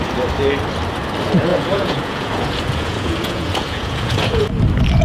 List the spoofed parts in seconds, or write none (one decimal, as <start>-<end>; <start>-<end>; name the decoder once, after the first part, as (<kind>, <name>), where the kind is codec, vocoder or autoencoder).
1.5-4.5 (vocoder, Vocos)